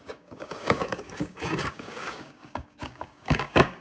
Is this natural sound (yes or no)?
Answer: no